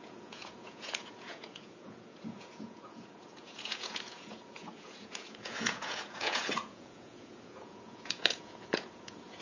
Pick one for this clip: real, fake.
fake